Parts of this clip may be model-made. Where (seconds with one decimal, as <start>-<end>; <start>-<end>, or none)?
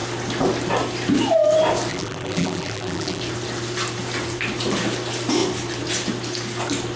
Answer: 1.9-3.2